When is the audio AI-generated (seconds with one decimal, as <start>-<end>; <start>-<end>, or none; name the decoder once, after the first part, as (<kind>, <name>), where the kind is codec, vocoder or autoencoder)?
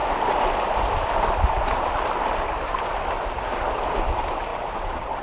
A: 4.5-5.2 (vocoder, BigVGAN v2)